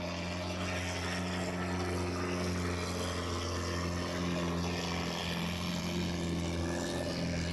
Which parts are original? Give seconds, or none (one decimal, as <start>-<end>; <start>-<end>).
0.0-7.5